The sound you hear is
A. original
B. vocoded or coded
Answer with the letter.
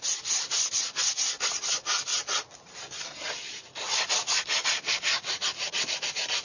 A